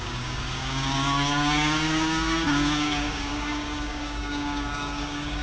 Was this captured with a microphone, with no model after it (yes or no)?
no